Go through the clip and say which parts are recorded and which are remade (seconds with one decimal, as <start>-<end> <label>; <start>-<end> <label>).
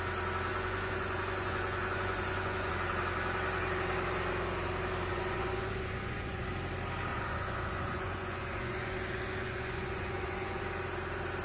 0.0-0.5 recorded; 0.5-2.7 remade; 2.7-5.1 recorded; 5.1-6.5 remade; 6.5-7.1 recorded; 7.1-10.6 remade; 10.6-11.4 recorded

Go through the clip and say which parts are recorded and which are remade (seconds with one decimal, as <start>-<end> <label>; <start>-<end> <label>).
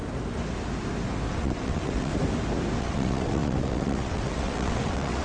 0.0-1.3 recorded; 1.3-2.1 remade; 2.1-2.8 recorded; 2.8-5.2 remade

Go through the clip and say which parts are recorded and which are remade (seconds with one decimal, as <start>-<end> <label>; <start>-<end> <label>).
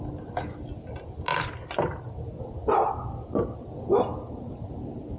0.0-5.2 recorded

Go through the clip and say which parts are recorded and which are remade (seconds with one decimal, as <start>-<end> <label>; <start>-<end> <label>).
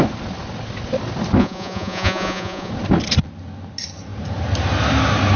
0.0-1.4 recorded; 1.4-2.7 remade; 2.7-5.4 recorded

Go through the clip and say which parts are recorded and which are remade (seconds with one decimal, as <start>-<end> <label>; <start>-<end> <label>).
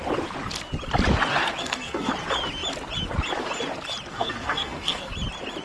0.0-1.6 recorded; 1.6-2.1 remade; 2.1-4.1 recorded; 4.1-5.1 remade; 5.1-5.6 recorded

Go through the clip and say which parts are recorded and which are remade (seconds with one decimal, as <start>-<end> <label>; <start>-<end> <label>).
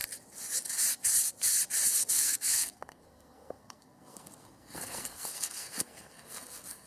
0.0-2.1 recorded; 2.1-6.9 remade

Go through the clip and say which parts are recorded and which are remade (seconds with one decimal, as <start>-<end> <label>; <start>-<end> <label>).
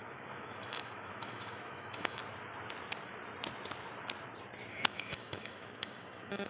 0.0-2.2 remade; 2.2-4.7 recorded; 4.7-6.5 remade